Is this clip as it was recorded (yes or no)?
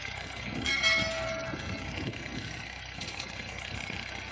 no